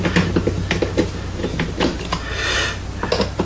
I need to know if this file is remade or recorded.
recorded